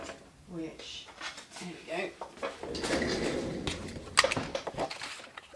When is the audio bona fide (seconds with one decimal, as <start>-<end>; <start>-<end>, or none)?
0.0-5.6